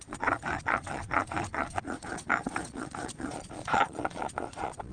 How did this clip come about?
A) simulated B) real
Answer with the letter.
A